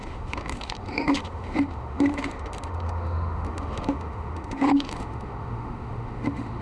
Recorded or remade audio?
remade